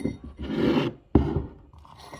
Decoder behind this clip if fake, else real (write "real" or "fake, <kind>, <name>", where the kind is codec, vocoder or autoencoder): real